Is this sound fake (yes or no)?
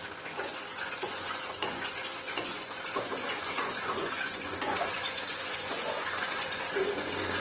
yes